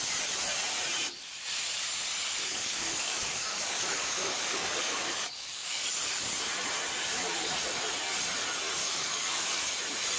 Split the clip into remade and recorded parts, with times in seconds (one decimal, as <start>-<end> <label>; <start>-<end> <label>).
0.0-2.4 recorded; 2.4-5.9 remade; 5.9-8.8 recorded; 8.8-9.7 remade; 9.7-10.2 recorded